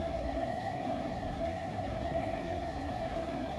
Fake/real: fake